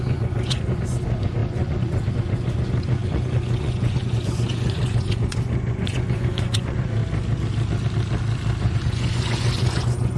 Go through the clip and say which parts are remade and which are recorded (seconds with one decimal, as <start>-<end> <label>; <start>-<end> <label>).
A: 0.0-7.0 remade; 7.0-8.6 recorded; 8.6-10.2 remade